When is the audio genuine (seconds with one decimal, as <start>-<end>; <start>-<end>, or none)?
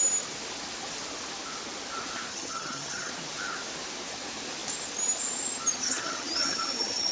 0.0-2.3; 3.1-5.8